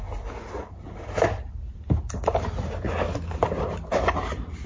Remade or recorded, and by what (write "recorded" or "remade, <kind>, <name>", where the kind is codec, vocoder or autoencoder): recorded